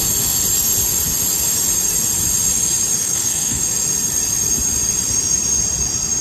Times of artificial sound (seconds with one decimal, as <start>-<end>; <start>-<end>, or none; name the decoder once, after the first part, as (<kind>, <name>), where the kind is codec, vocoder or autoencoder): 3.0-3.6 (codec, SNAC)